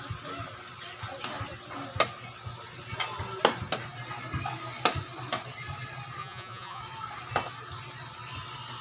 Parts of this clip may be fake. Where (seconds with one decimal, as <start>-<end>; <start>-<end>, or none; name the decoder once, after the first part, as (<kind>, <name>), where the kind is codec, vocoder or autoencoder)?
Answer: 6.2-6.8 (vocoder, Vocos)